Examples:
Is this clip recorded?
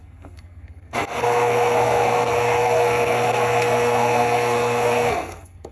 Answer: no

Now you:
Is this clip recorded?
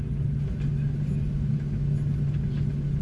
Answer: yes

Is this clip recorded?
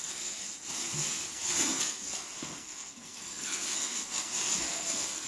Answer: no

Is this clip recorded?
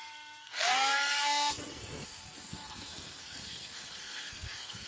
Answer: no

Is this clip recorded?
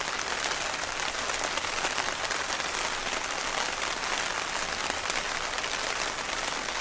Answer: yes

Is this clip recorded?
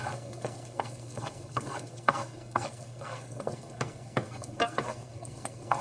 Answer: no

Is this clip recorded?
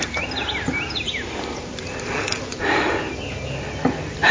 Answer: yes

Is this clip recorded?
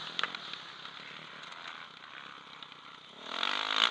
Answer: yes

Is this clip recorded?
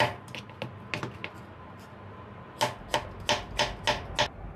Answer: yes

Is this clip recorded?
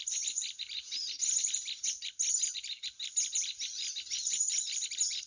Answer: yes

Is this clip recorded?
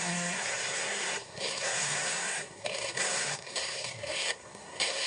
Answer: no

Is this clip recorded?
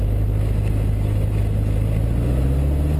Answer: yes